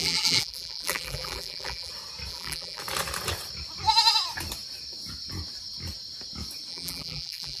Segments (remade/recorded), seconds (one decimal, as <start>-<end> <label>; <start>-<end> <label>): 0.0-1.9 remade; 1.9-2.3 recorded; 2.3-2.8 remade; 2.8-6.7 recorded; 6.7-7.6 remade